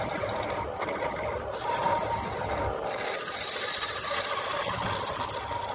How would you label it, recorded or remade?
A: recorded